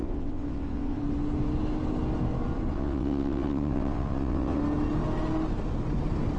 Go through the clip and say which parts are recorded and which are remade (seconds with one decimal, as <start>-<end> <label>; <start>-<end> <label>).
0.0-1.0 remade; 1.0-2.7 recorded; 2.7-4.6 remade; 4.6-6.4 recorded